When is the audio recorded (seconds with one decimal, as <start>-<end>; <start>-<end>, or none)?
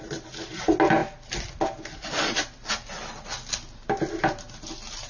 0.0-5.1